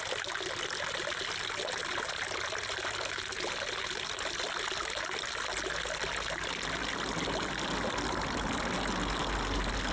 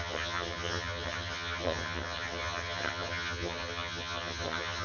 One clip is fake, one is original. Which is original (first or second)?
first